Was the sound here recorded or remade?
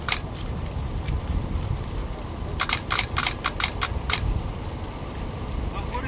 recorded